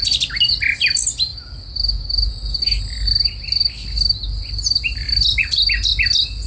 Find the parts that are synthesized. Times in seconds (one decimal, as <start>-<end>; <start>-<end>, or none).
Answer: none